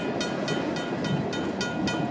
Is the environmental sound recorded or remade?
recorded